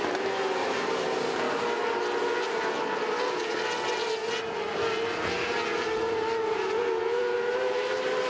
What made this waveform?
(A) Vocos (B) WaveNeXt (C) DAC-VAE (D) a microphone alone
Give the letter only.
D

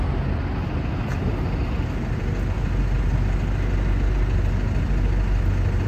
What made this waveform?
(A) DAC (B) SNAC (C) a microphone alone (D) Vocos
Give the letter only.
C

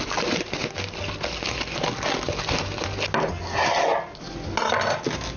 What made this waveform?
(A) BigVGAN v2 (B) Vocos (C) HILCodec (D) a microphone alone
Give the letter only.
D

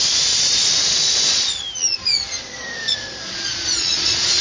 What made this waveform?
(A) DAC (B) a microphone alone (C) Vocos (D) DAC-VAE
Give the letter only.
C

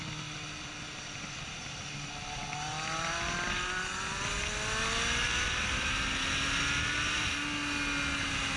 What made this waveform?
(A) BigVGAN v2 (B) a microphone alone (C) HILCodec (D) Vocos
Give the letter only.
B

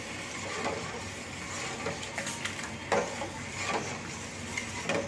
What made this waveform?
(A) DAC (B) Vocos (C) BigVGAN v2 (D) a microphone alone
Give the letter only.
D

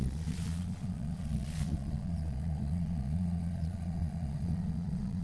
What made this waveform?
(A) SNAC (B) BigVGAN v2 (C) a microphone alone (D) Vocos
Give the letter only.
D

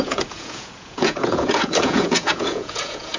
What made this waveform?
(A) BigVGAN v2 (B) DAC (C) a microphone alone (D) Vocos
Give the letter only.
D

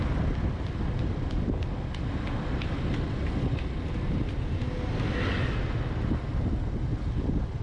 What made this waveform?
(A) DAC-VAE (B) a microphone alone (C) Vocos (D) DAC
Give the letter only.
B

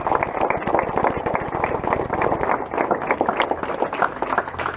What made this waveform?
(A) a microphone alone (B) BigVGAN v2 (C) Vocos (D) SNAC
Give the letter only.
A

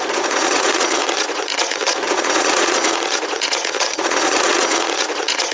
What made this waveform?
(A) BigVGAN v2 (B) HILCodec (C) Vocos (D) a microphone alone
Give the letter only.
C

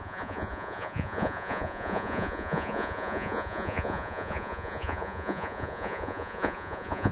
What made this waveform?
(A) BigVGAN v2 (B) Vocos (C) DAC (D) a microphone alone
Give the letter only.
B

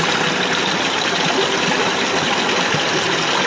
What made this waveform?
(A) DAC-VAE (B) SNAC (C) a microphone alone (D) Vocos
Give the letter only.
C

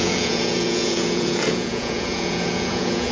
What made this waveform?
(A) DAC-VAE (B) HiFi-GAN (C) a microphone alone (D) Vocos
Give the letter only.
D